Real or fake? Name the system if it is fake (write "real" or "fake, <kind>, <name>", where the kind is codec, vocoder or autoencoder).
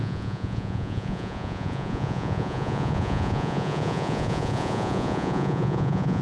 fake, vocoder, Vocos